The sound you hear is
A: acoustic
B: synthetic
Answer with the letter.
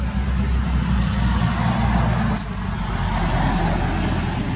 A